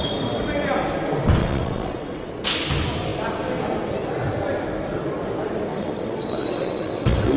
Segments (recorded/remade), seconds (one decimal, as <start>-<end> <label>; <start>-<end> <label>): 0.0-1.4 recorded; 1.4-2.3 remade; 2.3-5.7 recorded; 5.7-7.4 remade